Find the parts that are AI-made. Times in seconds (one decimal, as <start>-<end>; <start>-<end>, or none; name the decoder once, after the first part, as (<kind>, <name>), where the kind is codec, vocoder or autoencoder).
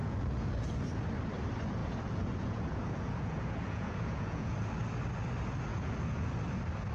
0.0-0.5 (vocoder, Vocos); 1.8-4.7; 5.7-6.3